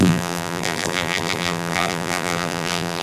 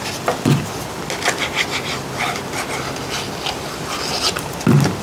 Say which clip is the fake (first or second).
first